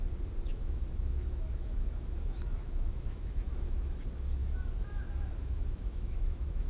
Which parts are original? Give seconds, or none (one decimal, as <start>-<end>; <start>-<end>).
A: 0.0-0.5; 4.0-4.4